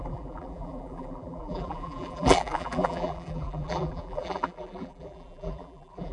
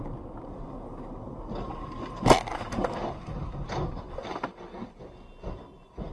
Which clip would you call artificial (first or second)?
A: first